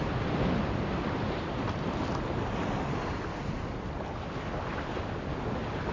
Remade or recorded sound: recorded